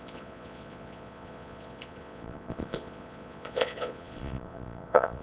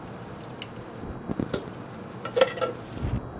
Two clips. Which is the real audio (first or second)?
second